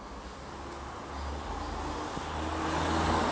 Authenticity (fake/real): real